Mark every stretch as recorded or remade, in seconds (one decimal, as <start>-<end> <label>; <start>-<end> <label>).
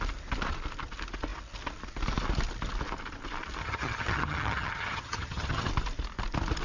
0.0-3.6 recorded; 3.6-5.7 remade; 5.7-6.6 recorded